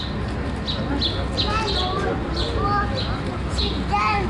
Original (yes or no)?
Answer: yes